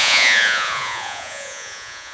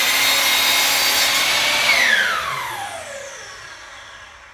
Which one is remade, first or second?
first